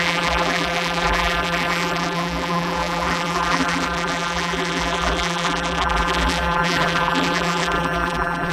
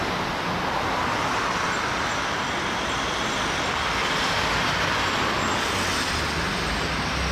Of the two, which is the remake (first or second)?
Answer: first